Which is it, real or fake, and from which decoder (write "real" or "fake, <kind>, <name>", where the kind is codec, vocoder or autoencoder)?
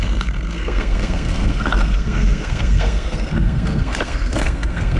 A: fake, codec, SNAC